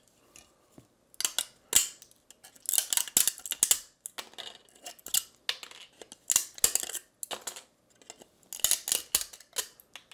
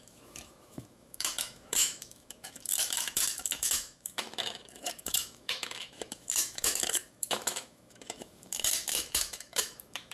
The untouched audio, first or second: first